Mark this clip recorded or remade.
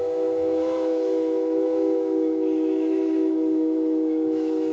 remade